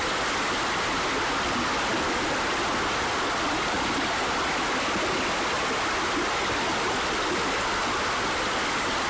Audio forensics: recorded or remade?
recorded